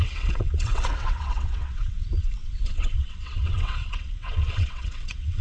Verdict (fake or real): fake